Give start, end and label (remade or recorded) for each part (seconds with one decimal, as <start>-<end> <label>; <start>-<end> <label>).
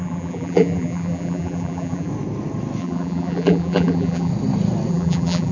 0.0-2.1 remade; 2.1-2.8 recorded; 2.8-4.3 remade; 4.3-4.9 recorded; 4.9-5.5 remade